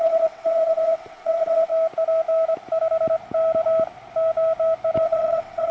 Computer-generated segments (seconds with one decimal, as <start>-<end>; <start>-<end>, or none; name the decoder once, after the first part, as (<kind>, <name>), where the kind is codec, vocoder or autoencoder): 0.0-1.7 (vocoder, WaveNeXt); 5.0-5.7